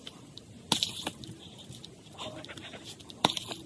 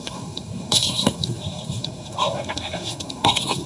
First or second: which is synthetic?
second